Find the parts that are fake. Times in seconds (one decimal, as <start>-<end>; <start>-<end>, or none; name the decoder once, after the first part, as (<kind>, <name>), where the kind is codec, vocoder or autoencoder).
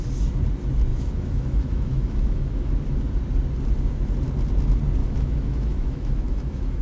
0.9-2.7 (autoencoder, DAC-VAE); 5.0-6.8